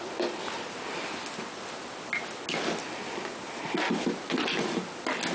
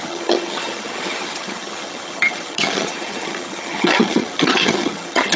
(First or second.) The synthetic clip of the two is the second